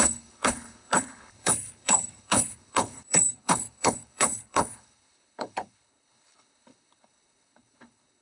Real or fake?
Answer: fake